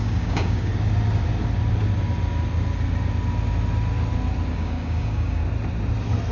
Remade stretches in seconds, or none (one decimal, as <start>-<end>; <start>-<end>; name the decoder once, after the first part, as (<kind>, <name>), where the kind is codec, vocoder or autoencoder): 0.0-0.7 (codec, DAC); 4.5-5.4